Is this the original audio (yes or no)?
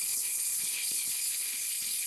no